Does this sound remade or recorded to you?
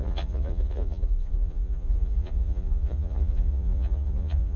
remade